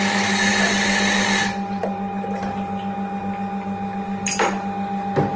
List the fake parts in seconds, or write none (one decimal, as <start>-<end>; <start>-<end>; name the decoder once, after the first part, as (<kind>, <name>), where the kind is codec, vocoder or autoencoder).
none